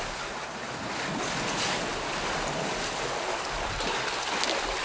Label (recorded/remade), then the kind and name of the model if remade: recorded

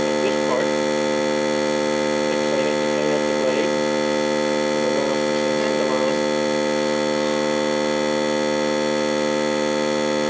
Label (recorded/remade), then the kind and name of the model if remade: recorded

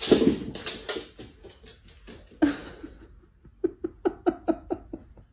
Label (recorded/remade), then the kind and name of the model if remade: recorded